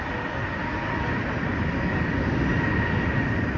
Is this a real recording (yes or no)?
yes